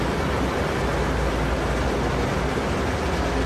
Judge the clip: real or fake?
real